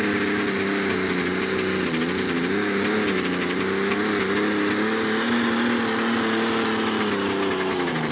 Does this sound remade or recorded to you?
recorded